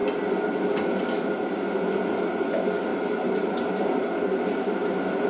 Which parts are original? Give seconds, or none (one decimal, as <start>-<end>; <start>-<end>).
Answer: 0.0-2.9; 3.8-5.3